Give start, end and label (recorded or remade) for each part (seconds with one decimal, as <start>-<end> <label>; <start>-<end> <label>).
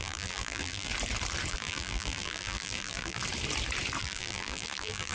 0.0-0.9 remade; 0.9-1.5 recorded; 1.5-3.2 remade; 3.2-4.0 recorded; 4.0-5.1 remade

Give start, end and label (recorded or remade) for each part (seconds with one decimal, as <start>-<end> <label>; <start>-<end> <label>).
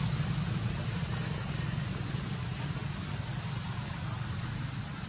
0.0-5.1 recorded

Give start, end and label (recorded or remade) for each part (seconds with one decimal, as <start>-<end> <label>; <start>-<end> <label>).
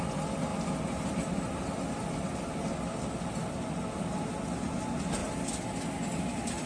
0.0-6.7 recorded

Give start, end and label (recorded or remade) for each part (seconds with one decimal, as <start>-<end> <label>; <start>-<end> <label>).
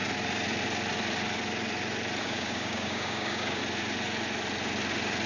0.0-2.2 recorded; 2.2-3.6 remade; 3.6-5.3 recorded